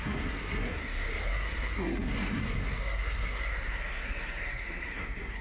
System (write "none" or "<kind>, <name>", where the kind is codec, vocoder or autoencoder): codec, SNAC